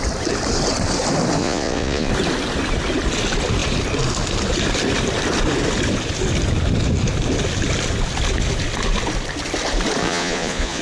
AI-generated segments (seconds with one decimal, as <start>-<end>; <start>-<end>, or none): 1.4-2.1; 10.0-10.8